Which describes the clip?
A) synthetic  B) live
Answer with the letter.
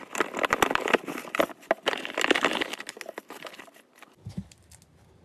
B